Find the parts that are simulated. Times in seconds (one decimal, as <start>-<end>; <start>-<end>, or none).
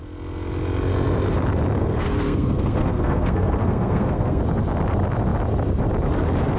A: 1.8-4.4